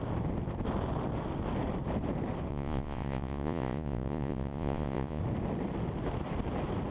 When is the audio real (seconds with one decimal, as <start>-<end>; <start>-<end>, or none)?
0.0-2.5; 5.2-6.9